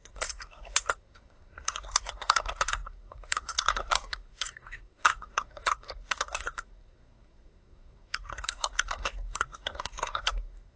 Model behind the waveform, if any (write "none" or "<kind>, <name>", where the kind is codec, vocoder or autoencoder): codec, SNAC